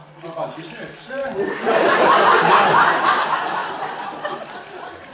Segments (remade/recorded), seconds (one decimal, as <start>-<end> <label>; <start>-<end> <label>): 0.0-5.1 recorded